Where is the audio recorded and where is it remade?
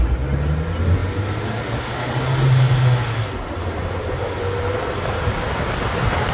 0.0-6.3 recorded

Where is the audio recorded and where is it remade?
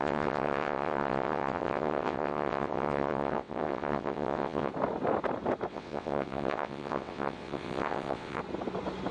0.0-4.7 remade; 4.7-5.7 recorded; 5.7-8.4 remade; 8.4-9.1 recorded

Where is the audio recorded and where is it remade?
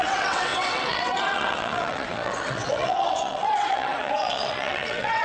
0.0-5.2 remade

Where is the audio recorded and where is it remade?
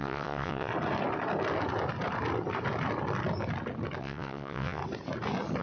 0.0-0.7 remade; 0.7-4.0 recorded; 4.0-4.8 remade; 4.8-5.6 recorded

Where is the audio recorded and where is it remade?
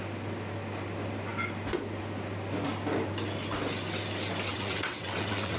0.0-4.5 recorded; 4.5-5.6 remade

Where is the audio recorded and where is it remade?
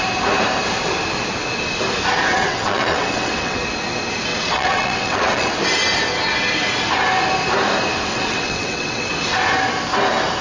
0.0-2.3 recorded; 2.3-3.6 remade; 3.6-4.3 recorded; 4.3-5.5 remade; 5.5-8.1 recorded; 8.1-9.1 remade; 9.1-10.4 recorded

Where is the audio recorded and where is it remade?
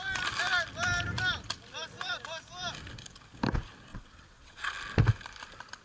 0.0-3.9 recorded; 3.9-4.7 remade; 4.7-5.8 recorded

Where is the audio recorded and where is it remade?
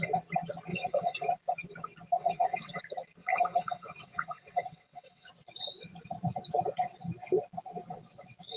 0.0-0.7 recorded; 0.7-1.3 remade; 1.3-2.2 recorded; 2.2-2.8 remade; 2.8-3.2 recorded; 3.2-5.3 remade; 5.3-8.6 recorded